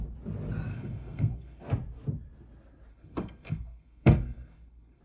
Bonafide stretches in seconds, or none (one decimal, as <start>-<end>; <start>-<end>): 0.0-0.7; 1.6-2.9